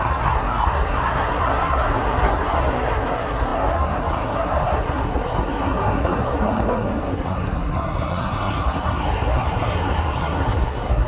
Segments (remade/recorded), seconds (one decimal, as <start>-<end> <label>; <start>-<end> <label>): 0.0-11.1 remade